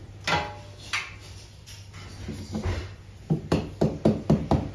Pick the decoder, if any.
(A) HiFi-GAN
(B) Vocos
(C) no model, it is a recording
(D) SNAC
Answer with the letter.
C